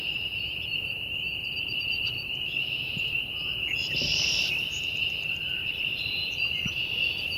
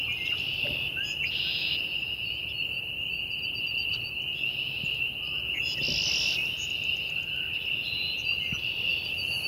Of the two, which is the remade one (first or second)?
first